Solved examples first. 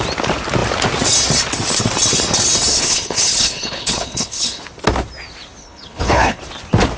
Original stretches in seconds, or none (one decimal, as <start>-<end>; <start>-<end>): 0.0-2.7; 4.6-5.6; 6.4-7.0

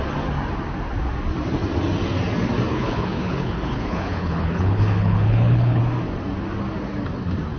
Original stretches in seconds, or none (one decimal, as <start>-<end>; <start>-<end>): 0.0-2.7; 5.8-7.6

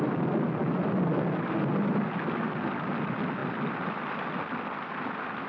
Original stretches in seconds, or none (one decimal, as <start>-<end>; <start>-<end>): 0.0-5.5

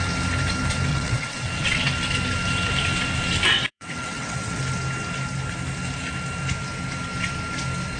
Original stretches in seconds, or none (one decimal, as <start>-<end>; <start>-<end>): 0.0-0.9; 1.9-3.7; 4.6-8.0